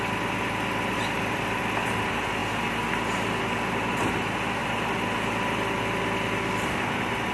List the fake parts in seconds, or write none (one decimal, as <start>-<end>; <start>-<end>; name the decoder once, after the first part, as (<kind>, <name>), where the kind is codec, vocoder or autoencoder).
none